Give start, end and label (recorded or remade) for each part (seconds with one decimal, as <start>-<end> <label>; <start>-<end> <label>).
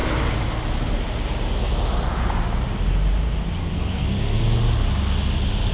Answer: 0.0-3.6 recorded; 3.6-4.4 remade; 4.4-5.7 recorded